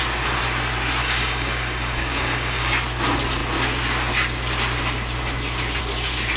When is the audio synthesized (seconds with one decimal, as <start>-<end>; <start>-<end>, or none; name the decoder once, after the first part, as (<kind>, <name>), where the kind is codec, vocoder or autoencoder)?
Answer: 1.0-2.7 (codec, DAC)